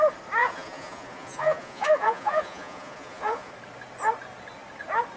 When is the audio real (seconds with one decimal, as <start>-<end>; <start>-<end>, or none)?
0.0-0.4; 3.5-5.2